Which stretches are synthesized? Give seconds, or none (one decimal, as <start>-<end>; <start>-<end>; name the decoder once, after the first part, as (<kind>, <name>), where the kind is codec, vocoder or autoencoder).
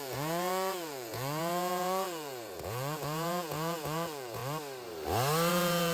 0.0-4.4 (vocoder, Vocos); 5.5-5.9